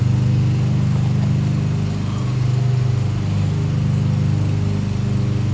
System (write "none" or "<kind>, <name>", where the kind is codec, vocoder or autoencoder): none